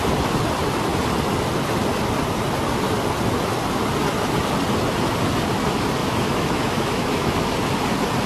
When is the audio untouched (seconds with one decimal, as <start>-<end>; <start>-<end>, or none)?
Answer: 0.0-6.0; 7.4-8.3